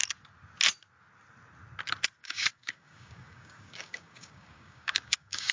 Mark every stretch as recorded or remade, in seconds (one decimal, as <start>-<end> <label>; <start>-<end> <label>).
0.0-2.2 recorded; 2.2-5.5 remade